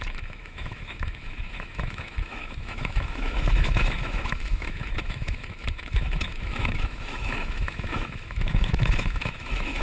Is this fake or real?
fake